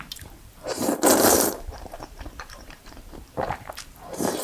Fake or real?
fake